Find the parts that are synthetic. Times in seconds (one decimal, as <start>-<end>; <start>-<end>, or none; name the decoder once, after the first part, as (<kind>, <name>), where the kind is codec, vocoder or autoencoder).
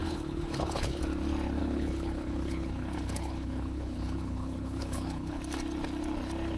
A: 0.0-1.0 (codec, HILCodec); 1.6-5.4